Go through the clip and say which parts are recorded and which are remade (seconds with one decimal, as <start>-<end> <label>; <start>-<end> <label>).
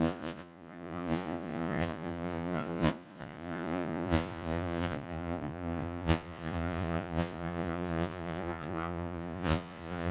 0.0-10.1 remade